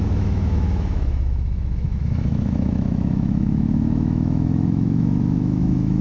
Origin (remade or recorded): remade